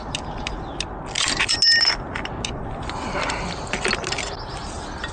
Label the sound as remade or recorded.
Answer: recorded